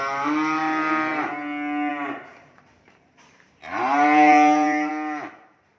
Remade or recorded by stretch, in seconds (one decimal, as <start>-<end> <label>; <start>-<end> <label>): 0.0-2.3 recorded; 2.3-4.9 remade; 4.9-5.8 recorded